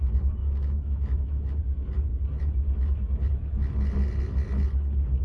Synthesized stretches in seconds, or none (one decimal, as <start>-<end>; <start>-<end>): 0.4-1.6